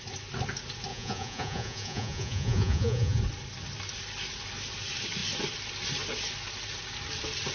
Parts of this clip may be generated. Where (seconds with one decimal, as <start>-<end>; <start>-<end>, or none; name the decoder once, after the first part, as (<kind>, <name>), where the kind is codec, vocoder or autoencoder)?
0.9-3.2 (vocoder, Vocos)